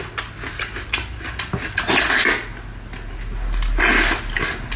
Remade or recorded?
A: recorded